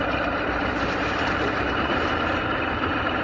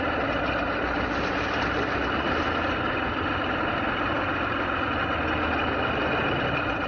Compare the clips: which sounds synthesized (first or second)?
first